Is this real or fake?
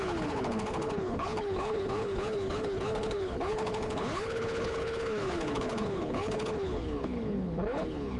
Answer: fake